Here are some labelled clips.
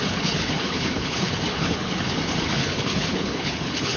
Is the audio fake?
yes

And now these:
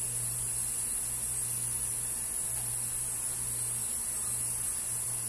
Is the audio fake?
no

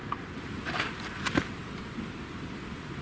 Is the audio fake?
no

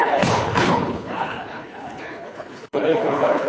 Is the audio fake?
yes